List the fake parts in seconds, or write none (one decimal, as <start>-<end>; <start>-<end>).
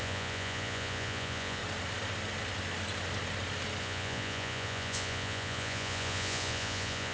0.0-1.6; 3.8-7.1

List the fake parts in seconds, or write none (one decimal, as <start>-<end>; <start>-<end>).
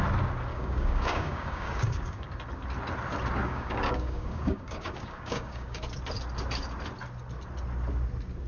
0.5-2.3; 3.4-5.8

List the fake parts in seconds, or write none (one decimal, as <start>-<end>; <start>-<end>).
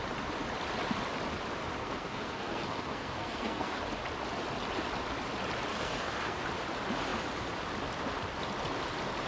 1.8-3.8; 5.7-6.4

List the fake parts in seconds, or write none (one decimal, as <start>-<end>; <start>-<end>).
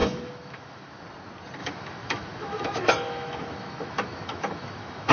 0.0-1.0; 1.6-5.1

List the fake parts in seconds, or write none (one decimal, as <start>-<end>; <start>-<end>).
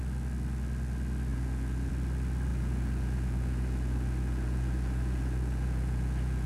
1.3-1.9; 2.5-6.5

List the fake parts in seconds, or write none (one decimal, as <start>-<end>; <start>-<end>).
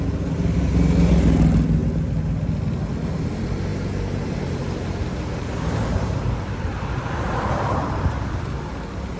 3.7-8.7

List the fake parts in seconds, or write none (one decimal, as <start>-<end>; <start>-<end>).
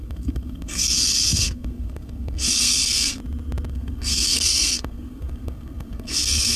0.0-3.2; 3.7-6.6